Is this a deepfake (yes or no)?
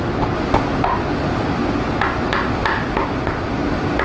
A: no